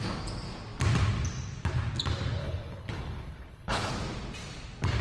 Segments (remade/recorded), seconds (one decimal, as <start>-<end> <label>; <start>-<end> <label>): 0.0-2.4 recorded; 2.4-3.9 remade; 3.9-5.0 recorded